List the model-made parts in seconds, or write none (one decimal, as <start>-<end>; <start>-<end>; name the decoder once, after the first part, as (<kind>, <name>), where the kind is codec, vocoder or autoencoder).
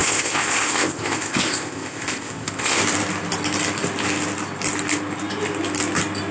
0.0-2.8 (codec, ZipCodec)